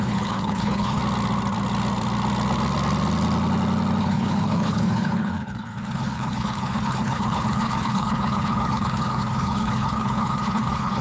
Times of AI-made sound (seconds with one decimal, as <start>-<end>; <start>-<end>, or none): 0.0-1.0; 4.0-11.0